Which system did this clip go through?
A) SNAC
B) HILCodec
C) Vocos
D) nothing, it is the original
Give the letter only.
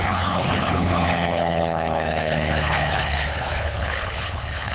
B